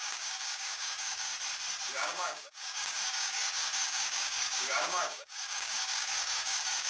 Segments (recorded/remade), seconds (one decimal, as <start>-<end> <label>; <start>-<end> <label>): 0.0-1.3 remade; 1.3-1.9 recorded; 1.9-6.9 remade